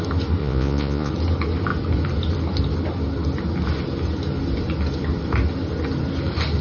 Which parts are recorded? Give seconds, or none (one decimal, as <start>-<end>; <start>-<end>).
0.0-0.4; 1.1-6.6